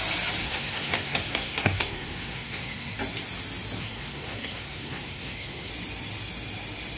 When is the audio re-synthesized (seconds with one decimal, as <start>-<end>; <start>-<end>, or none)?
0.4-3.0; 3.8-5.7